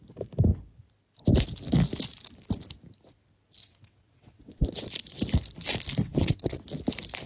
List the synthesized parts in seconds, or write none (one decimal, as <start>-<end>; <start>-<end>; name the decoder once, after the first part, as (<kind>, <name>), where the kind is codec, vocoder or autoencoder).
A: 3.6-4.9 (vocoder, WaveNeXt); 6.0-6.6